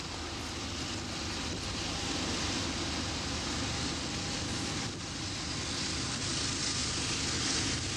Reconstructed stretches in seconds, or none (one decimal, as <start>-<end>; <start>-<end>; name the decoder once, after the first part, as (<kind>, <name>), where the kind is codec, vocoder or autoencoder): none

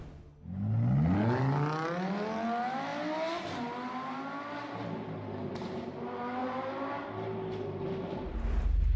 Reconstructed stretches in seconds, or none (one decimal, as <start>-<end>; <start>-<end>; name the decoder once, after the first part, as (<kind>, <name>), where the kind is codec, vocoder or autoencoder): none

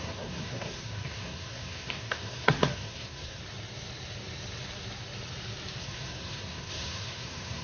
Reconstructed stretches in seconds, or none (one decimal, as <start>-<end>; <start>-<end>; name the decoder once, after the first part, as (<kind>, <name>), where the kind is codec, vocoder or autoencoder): 0.0-3.4 (codec, SNAC); 5.8-7.6

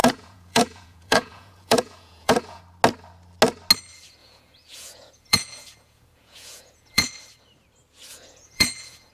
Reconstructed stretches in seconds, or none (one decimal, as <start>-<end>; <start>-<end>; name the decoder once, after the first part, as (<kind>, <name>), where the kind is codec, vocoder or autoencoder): 0.0-2.6 (vocoder, Vocos); 4.2-7.1; 8.1-9.1

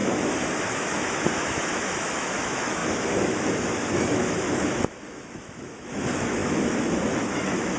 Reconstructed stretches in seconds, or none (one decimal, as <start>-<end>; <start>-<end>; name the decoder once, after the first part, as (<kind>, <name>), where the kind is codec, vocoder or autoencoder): 0.0-7.8 (autoencoder, DAC-VAE)